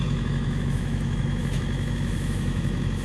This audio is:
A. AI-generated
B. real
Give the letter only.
A